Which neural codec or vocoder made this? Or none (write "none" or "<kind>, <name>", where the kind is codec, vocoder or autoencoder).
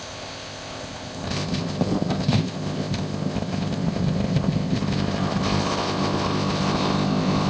codec, ZipCodec